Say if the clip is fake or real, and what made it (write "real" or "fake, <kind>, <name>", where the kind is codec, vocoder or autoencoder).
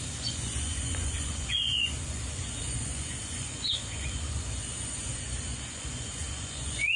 fake, vocoder, Vocos